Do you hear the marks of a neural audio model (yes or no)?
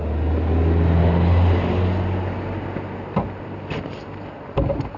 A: no